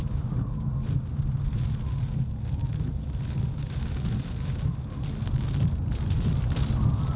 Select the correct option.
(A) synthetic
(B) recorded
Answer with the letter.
B